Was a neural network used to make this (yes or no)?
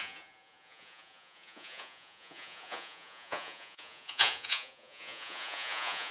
yes